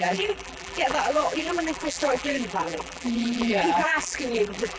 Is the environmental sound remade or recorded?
remade